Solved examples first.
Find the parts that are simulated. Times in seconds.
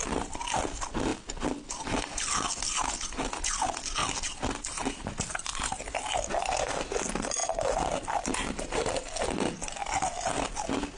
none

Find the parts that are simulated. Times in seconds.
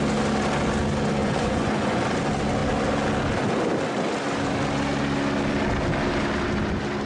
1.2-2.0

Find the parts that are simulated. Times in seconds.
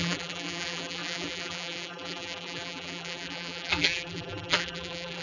0.0-5.2